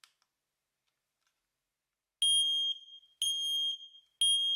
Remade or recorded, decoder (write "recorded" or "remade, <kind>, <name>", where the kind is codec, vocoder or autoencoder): recorded